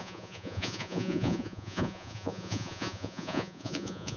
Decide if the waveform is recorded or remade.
remade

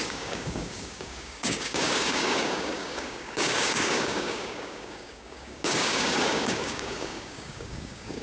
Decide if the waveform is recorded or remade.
remade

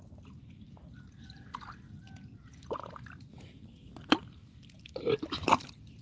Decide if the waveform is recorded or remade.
recorded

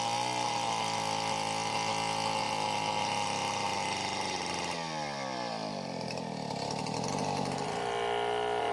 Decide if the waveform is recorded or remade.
recorded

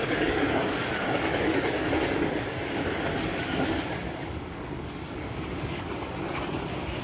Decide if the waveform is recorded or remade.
remade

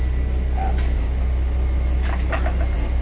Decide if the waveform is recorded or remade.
recorded